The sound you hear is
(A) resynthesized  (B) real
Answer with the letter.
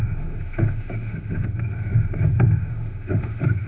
A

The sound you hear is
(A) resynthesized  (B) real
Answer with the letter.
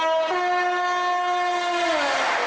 B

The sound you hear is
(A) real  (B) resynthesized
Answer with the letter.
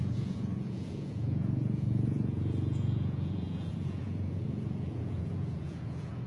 B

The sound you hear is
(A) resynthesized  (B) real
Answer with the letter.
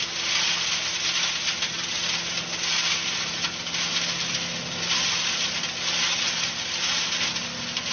B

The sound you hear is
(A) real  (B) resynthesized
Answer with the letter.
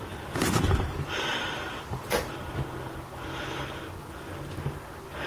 A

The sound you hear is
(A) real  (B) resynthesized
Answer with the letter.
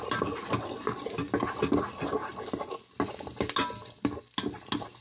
A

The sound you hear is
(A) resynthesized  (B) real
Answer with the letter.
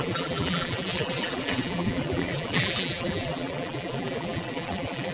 A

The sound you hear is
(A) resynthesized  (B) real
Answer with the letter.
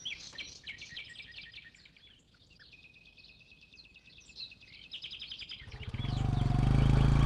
B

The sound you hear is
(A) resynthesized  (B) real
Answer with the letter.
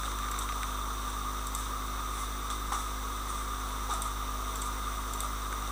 B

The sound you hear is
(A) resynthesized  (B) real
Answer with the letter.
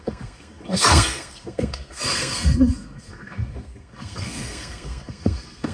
A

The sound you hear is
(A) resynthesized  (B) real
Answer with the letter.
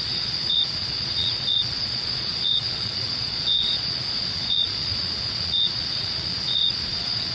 A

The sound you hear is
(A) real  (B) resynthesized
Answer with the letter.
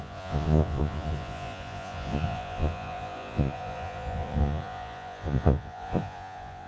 B